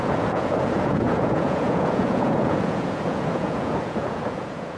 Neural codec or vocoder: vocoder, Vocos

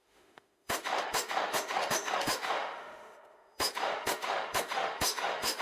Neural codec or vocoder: autoencoder, DAC-VAE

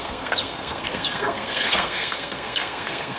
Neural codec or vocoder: codec, SNAC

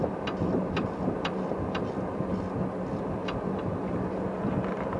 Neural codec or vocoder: none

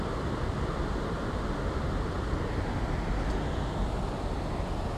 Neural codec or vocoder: none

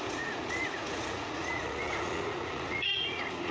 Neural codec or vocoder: vocoder, Vocos